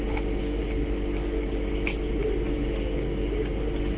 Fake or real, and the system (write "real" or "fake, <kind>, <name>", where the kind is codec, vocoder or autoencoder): real